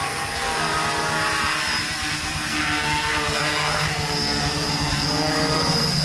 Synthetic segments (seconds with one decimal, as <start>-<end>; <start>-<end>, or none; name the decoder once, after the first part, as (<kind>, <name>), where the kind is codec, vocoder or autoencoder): 0.0-0.7 (codec, SNAC); 2.1-6.0